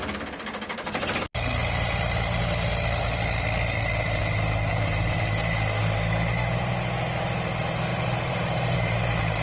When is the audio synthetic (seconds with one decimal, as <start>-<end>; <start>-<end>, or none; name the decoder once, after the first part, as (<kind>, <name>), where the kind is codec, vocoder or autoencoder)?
4.7-5.2 (vocoder, BigVGAN v2); 7.9-9.0